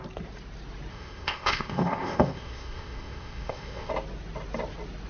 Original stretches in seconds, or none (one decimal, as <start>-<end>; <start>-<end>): 0.0-0.9; 3.9-5.1